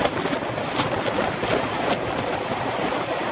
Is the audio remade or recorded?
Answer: recorded